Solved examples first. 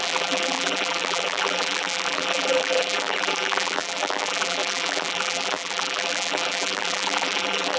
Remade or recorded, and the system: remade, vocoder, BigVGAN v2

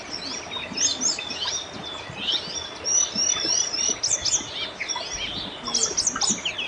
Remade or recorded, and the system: recorded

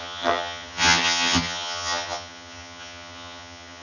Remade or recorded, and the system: remade, vocoder, HiFi-GAN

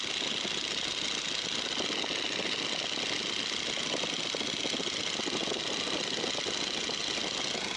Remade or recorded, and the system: recorded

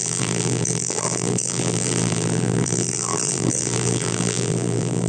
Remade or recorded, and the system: remade, vocoder, BigVGAN v2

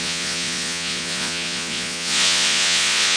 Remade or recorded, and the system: remade, vocoder, Vocos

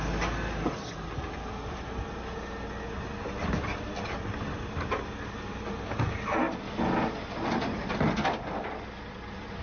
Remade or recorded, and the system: recorded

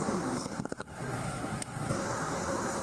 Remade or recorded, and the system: remade, codec, SNAC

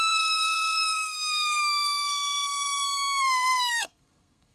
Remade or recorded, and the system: remade, codec, SNAC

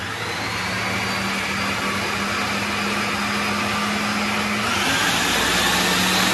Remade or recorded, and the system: recorded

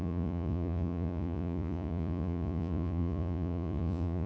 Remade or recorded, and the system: remade, vocoder, Vocos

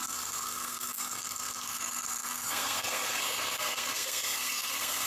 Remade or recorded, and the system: remade, codec, SNAC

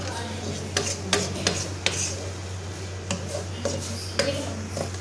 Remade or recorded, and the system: recorded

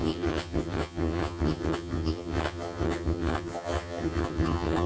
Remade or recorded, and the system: remade, vocoder, HiFi-GAN